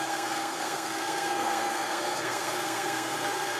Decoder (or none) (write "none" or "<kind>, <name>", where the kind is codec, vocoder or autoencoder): codec, SNAC